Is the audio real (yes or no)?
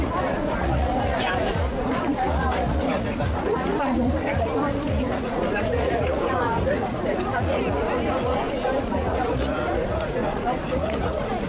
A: no